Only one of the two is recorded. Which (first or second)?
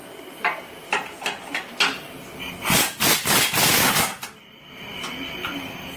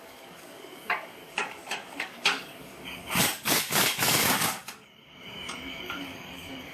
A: first